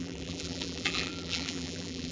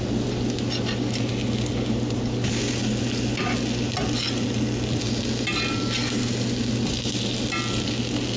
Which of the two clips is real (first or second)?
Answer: second